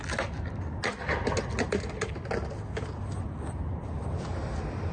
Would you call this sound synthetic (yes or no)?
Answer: no